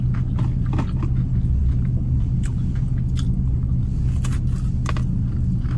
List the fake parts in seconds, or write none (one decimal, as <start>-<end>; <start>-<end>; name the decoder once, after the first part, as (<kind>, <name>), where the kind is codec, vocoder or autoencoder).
none